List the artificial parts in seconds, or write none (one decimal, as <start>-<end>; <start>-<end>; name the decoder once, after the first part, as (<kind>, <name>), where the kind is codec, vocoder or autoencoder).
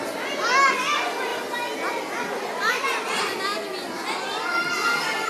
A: 1.3-2.7 (vocoder, BigVGAN v2); 3.5-4.7